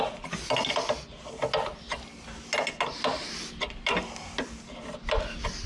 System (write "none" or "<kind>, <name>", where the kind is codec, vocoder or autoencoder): none